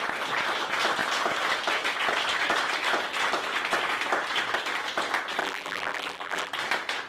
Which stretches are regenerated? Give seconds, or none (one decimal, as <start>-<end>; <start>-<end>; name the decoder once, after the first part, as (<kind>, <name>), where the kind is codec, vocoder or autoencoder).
5.4-6.5 (vocoder, BigVGAN v2)